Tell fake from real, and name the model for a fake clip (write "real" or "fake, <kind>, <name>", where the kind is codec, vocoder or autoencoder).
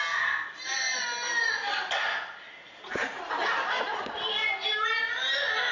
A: real